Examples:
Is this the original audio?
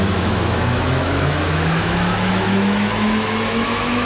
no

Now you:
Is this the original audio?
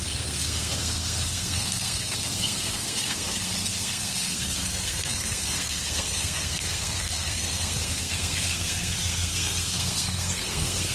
no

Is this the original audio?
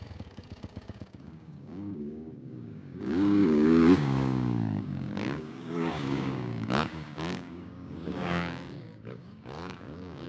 no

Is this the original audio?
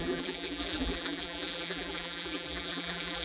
no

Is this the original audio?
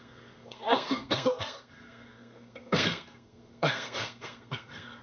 no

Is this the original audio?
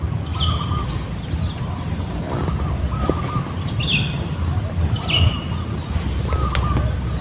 yes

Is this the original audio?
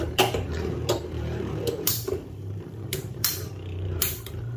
no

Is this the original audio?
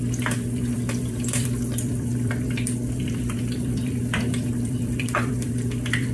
no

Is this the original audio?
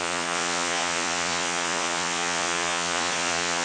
no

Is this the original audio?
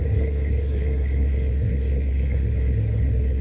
no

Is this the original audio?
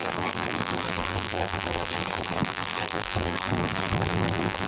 no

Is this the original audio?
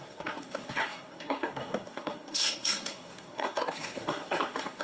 no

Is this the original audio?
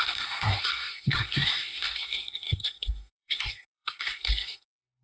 no